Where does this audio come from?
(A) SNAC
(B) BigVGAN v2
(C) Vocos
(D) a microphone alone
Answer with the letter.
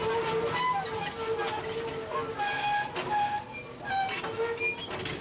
D